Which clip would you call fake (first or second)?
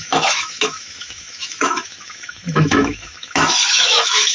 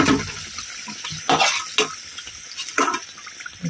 first